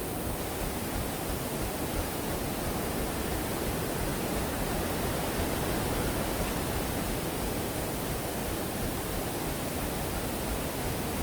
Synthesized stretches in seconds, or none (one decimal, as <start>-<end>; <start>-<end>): none